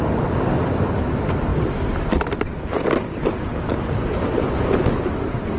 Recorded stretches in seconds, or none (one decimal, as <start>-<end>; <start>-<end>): 0.0-5.6